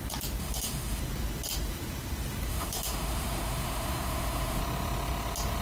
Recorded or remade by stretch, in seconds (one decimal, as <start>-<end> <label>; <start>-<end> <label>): 0.0-0.4 recorded; 0.4-1.0 remade; 1.0-2.5 recorded; 2.5-4.6 remade; 4.6-5.6 recorded

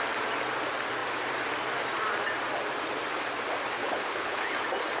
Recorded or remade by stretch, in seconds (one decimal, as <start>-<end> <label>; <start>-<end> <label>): 0.0-3.8 recorded; 3.8-4.5 remade; 4.5-5.0 recorded

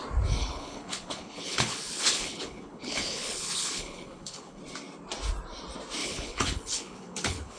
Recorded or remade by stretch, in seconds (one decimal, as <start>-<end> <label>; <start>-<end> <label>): 0.0-0.4 recorded; 0.4-4.6 remade; 4.6-6.0 recorded; 6.0-7.6 remade

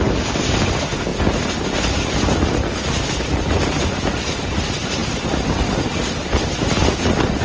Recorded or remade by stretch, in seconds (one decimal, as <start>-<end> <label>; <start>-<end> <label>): 0.0-7.4 recorded